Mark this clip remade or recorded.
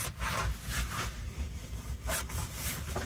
recorded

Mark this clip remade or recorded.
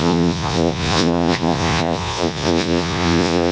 remade